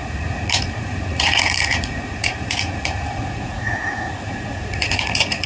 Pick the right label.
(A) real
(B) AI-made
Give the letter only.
B